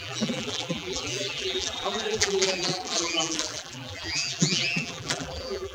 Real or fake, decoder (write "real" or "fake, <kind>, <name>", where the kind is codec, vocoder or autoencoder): fake, vocoder, BigVGAN v2